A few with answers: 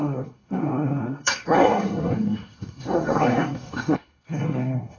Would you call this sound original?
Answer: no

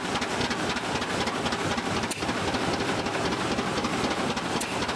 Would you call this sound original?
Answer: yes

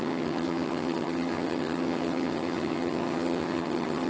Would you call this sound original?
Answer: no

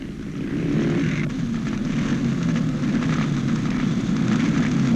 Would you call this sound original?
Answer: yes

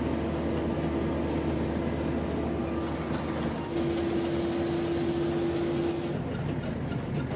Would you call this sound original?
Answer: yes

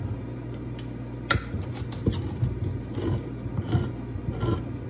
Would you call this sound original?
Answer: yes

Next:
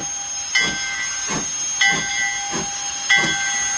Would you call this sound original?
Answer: yes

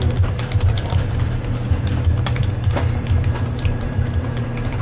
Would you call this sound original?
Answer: no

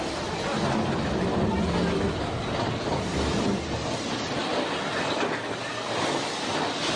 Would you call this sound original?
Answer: yes